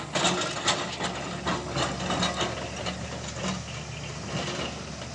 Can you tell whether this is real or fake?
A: real